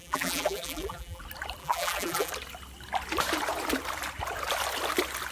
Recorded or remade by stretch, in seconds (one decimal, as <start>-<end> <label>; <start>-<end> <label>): 0.0-1.2 remade; 1.2-1.6 recorded; 1.6-2.3 remade; 2.3-5.3 recorded